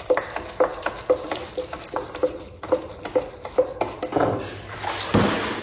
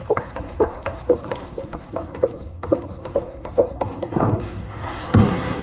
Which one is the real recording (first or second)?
first